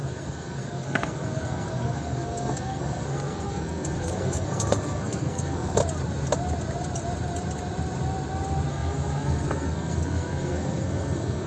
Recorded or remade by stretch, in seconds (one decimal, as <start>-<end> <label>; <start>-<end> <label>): 0.0-5.8 remade; 5.8-8.7 recorded; 8.7-11.5 remade